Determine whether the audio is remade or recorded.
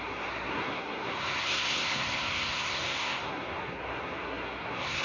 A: remade